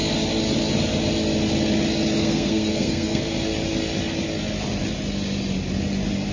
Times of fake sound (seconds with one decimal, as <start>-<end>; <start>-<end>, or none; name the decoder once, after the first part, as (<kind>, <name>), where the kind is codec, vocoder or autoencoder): 2.2-3.2 (codec, SNAC)